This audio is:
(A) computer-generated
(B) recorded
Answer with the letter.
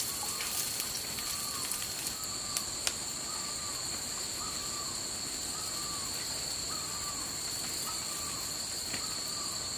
A